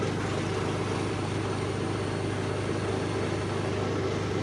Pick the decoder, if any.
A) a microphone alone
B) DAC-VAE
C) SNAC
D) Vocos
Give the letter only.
A